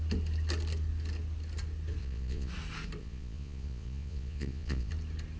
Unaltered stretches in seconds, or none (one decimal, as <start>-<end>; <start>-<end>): 0.0-2.0; 2.5-3.0; 4.9-5.4